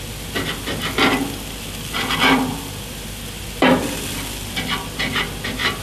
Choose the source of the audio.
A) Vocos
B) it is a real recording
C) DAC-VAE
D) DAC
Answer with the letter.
B